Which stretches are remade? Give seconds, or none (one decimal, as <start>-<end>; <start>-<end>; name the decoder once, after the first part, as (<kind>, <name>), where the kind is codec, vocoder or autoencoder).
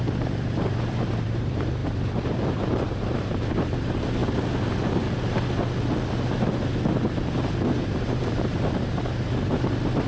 0.0-4.2 (vocoder, BigVGAN v2); 7.2-10.1